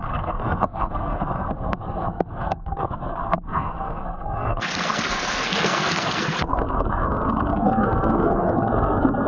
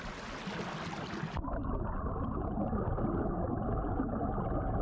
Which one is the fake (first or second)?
first